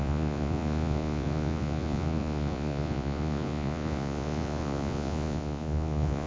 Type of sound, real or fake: fake